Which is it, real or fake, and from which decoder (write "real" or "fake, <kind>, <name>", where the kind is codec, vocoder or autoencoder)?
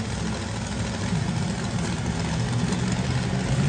real